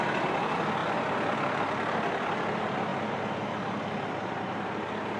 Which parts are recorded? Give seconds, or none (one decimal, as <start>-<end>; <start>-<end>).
0.0-5.2